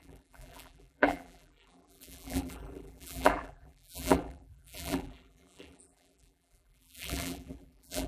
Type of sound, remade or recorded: remade